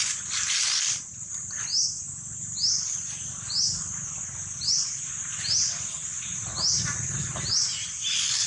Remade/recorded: recorded